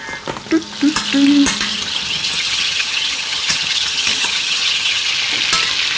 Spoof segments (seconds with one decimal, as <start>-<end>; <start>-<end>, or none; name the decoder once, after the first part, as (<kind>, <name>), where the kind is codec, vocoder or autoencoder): 1.7-5.1 (vocoder, HiFi-GAN)